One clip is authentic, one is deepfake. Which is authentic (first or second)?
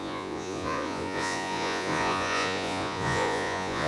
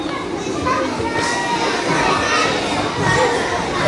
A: second